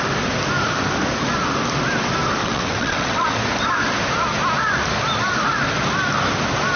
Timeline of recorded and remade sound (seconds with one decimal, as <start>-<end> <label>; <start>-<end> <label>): 0.0-2.4 recorded; 2.4-3.4 remade; 3.4-6.8 recorded